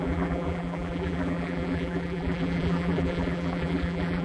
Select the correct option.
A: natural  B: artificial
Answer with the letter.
B